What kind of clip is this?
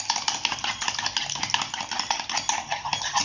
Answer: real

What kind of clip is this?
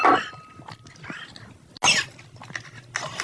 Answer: real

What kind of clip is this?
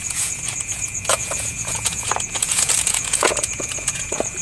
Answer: fake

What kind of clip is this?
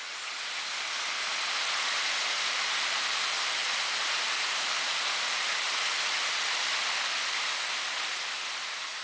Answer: real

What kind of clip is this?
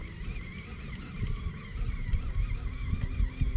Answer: real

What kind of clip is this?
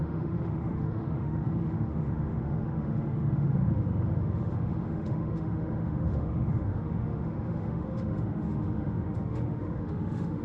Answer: fake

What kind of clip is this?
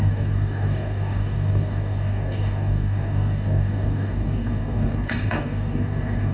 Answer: fake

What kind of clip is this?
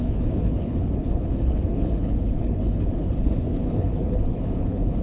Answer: fake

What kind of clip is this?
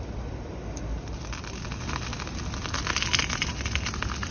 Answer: real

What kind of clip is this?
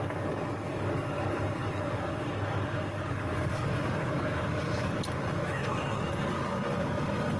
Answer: fake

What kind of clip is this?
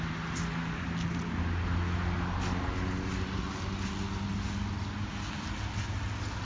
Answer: real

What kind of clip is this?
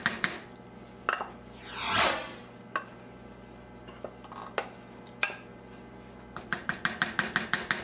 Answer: real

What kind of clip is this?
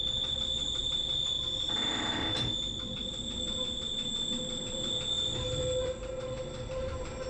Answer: real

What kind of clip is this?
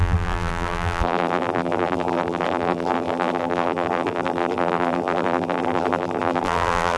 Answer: fake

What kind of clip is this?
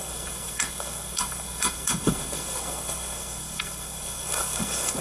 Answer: fake